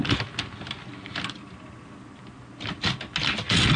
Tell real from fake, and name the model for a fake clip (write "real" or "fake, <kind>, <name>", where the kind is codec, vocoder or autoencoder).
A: real